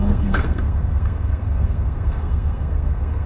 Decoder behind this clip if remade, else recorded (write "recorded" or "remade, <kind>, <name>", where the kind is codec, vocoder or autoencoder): remade, codec, SNAC